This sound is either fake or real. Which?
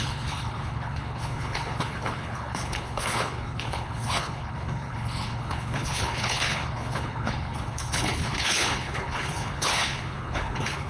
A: fake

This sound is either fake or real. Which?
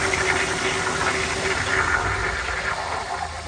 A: real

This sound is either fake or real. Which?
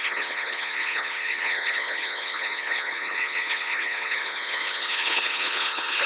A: fake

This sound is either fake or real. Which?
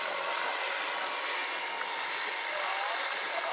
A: real